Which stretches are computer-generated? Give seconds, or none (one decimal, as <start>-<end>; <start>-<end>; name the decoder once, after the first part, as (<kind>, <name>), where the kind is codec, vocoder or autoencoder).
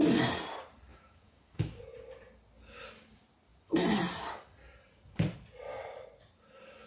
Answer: 0.9-1.8 (autoencoder, DAC-VAE)